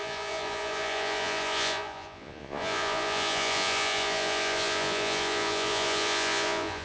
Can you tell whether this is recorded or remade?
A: remade